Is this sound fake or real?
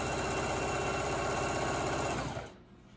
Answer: real